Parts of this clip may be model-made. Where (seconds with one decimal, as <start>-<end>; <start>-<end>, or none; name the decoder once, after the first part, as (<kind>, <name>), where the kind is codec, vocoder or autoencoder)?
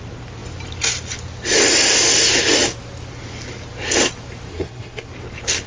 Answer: 4.5-5.1 (codec, SNAC)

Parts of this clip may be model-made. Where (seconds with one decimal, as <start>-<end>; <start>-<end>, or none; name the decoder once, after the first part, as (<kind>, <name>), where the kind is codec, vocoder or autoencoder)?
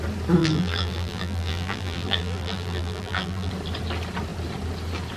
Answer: 0.4-3.5 (vocoder, BigVGAN v2)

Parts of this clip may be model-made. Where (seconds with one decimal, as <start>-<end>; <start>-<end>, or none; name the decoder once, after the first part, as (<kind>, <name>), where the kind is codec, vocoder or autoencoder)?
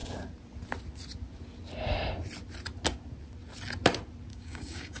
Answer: 4.3-5.0 (codec, DAC)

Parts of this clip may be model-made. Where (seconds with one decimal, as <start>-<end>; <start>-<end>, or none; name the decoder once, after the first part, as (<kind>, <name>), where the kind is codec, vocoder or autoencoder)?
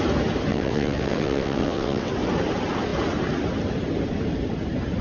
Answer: 0.5-2.1 (vocoder, WaveNeXt)